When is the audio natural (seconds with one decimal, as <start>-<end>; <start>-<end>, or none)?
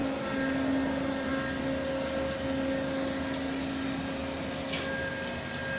0.0-5.8